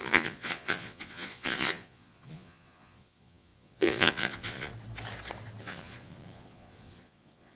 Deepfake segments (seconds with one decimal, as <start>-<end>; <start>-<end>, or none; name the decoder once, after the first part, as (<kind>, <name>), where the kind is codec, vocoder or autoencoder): 0.0-4.7 (vocoder, Vocos); 5.6-7.6